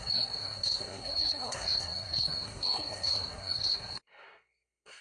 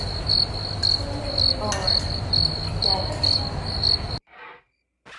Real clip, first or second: second